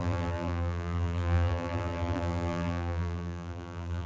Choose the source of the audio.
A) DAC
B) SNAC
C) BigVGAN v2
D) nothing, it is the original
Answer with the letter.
C